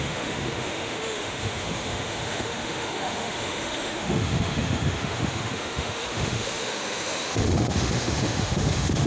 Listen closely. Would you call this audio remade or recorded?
remade